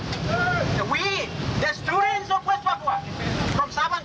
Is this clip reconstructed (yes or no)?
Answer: yes